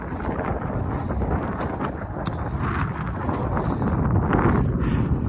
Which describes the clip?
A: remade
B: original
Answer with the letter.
B